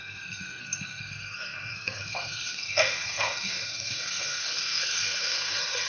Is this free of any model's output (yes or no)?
no